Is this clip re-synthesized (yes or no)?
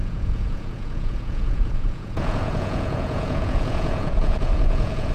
yes